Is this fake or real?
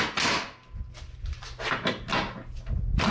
real